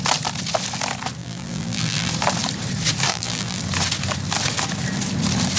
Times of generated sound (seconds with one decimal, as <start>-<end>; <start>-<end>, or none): 1.2-2.1; 3.1-3.6